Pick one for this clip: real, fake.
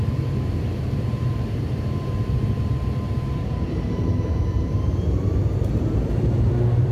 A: fake